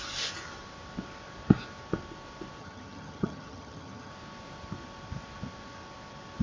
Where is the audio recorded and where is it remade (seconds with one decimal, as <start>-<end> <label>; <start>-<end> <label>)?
0.0-2.6 recorded; 2.6-4.1 remade; 4.1-6.4 recorded